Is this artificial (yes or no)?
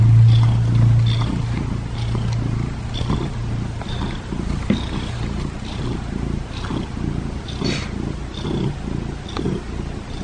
no